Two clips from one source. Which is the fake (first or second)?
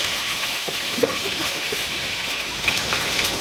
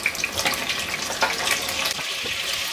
first